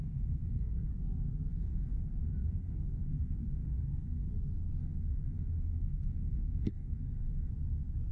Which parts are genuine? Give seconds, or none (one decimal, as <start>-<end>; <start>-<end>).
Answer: 0.9-1.5; 4.3-4.8; 7.5-8.1